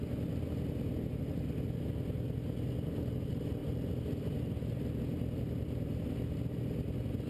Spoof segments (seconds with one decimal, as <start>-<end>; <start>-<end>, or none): none